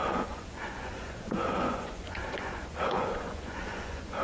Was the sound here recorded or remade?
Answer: remade